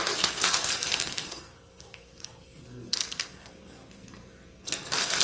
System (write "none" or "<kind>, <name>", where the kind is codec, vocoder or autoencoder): codec, SNAC